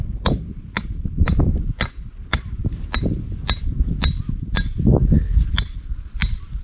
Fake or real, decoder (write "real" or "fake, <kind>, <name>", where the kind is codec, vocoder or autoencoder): real